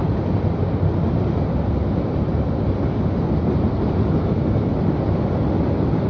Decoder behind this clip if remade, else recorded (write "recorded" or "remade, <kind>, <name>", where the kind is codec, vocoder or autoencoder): recorded